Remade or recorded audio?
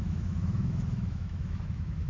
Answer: remade